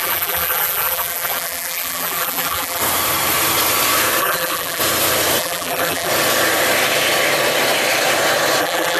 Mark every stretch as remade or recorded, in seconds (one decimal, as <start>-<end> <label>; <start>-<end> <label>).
0.0-2.8 remade; 2.8-4.2 recorded; 4.2-4.8 remade; 4.8-5.4 recorded; 5.4-6.1 remade; 6.1-8.6 recorded; 8.6-9.0 remade